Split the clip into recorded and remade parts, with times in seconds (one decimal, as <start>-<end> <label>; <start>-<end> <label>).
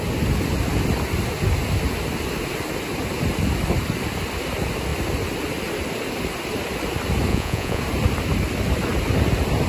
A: 0.0-7.3 recorded; 7.3-7.8 remade; 7.8-9.7 recorded